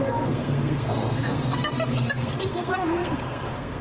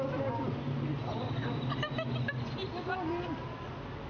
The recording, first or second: second